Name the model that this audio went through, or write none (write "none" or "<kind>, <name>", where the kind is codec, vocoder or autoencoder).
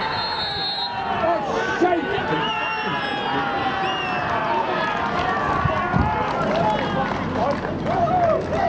none